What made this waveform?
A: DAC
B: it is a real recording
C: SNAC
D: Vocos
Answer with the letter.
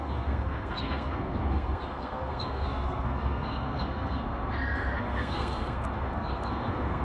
C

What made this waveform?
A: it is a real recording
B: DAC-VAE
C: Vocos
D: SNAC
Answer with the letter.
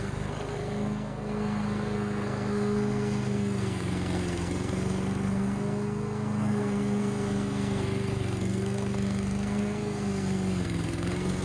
D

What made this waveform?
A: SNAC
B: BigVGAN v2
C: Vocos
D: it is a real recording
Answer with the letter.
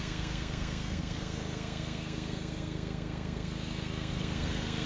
A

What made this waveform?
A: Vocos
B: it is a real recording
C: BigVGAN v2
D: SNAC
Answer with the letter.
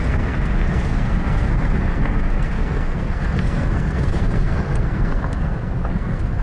D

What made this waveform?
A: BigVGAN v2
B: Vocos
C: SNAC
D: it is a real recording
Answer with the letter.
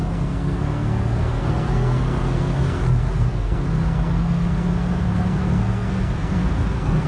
C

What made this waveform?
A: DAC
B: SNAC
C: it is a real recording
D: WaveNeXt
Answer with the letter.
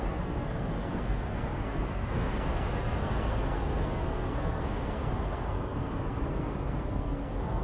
B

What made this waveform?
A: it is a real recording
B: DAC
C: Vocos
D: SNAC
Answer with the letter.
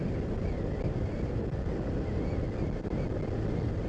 A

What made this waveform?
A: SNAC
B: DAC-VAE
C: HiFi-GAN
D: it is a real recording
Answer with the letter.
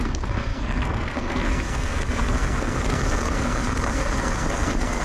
A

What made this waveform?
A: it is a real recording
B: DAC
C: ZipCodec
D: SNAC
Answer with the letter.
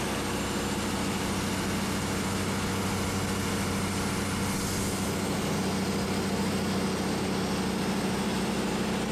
A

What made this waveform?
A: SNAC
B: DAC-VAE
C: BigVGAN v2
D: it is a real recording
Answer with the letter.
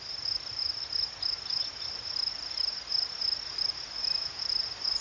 D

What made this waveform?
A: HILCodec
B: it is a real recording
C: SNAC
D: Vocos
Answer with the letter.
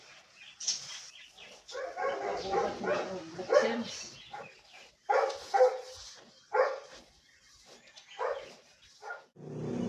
B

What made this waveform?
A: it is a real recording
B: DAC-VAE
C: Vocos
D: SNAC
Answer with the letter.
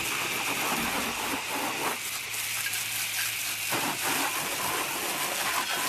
A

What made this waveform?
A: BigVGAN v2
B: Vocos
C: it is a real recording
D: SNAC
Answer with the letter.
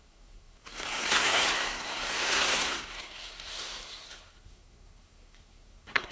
D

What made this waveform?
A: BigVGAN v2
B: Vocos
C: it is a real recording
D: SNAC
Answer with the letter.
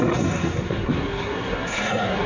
D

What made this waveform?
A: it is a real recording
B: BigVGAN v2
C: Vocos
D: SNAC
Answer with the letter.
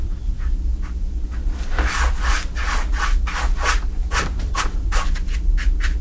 A